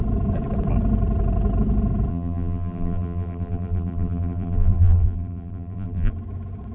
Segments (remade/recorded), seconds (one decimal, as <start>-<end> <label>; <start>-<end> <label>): 0.0-2.1 recorded; 2.1-6.1 remade; 6.1-6.7 recorded

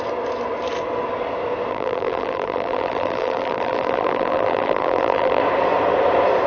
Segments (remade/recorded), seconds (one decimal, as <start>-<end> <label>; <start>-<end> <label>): 0.0-1.7 recorded; 1.7-5.4 remade; 5.4-6.5 recorded

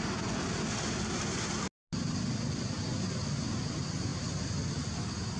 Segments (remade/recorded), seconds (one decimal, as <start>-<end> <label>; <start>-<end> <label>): 0.0-5.4 recorded

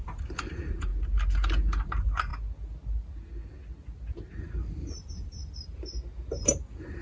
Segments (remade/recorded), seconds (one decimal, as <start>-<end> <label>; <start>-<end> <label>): 0.0-0.9 remade; 0.9-1.8 recorded; 1.8-2.3 remade; 2.3-4.4 recorded; 4.4-5.4 remade; 5.4-6.3 recorded; 6.3-7.0 remade

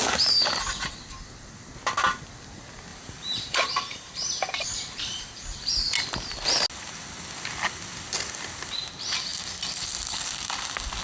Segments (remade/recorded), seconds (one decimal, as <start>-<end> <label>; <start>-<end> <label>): 0.0-2.9 recorded; 2.9-5.7 remade; 5.7-11.0 recorded

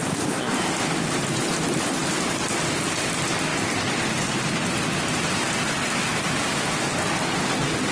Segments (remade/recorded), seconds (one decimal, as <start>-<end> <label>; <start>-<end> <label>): 0.0-3.5 recorded; 3.5-7.9 remade

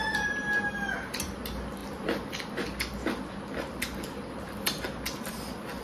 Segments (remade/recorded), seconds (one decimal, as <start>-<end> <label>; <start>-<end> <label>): 0.0-5.8 recorded

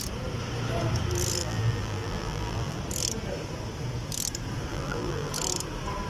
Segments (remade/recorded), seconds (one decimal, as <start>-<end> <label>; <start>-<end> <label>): 0.0-1.4 recorded; 1.4-2.8 remade; 2.8-4.7 recorded; 4.7-5.3 remade; 5.3-6.1 recorded